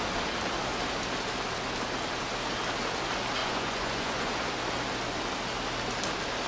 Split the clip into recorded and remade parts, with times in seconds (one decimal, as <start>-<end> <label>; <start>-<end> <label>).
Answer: 0.0-3.4 recorded; 3.4-4.4 remade; 4.4-6.5 recorded